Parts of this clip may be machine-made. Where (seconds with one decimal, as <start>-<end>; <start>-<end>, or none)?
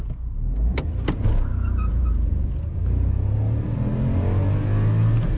1.9-2.5